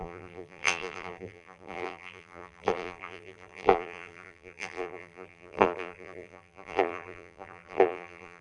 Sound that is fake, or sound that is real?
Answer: fake